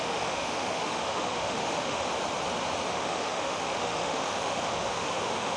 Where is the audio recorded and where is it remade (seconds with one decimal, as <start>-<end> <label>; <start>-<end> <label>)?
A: 0.0-2.1 remade; 2.1-2.9 recorded; 2.9-5.6 remade

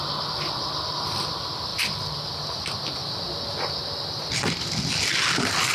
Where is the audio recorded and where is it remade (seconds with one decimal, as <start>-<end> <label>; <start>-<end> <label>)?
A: 0.0-1.7 recorded; 1.7-2.6 remade; 2.6-5.7 recorded